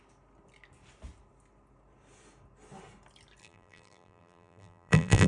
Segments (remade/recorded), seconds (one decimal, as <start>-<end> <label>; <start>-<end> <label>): 0.0-3.4 recorded; 3.4-5.3 remade